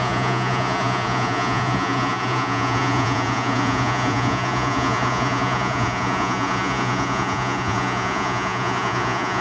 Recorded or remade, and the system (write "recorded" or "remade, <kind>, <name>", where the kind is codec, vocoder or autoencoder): remade, vocoder, Vocos